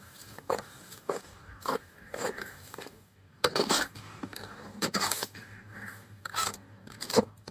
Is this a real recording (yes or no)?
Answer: no